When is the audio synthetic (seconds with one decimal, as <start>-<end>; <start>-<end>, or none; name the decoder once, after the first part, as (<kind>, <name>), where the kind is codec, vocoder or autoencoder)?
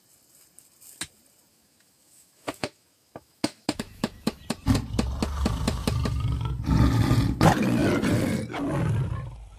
1.5-4.4 (autoencoder, DAC-VAE)